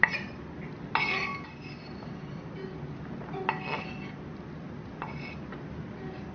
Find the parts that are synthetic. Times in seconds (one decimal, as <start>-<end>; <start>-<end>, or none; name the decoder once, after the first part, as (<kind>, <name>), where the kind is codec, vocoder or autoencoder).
none